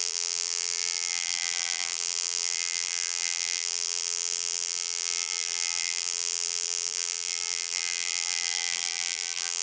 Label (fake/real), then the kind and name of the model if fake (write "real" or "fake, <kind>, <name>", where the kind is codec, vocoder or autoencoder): fake, vocoder, BigVGAN v2